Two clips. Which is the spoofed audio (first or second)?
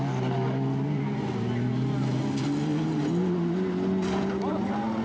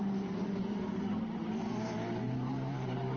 second